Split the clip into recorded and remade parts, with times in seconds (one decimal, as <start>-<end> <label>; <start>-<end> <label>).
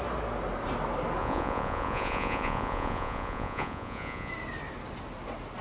0.0-1.2 recorded; 1.2-4.3 remade; 4.3-5.6 recorded